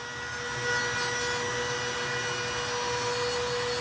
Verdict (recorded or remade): recorded